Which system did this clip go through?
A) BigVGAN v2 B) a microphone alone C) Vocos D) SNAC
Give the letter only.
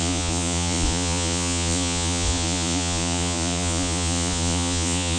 C